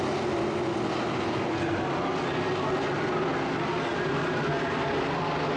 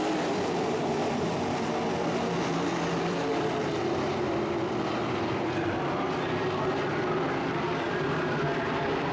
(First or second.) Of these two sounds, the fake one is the second